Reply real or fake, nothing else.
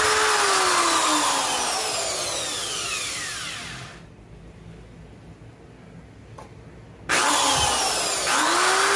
real